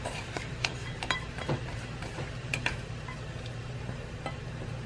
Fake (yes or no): yes